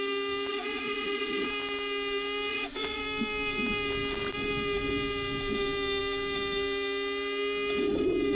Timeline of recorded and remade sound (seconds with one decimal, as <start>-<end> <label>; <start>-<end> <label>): 0.0-0.5 recorded; 0.5-1.5 remade; 1.5-2.5 recorded; 2.5-3.0 remade; 3.0-8.3 recorded